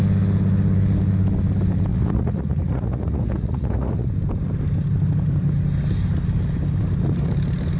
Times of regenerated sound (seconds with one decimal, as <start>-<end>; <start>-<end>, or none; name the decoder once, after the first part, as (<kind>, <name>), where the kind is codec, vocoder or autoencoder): 1.9-4.1 (vocoder, Vocos)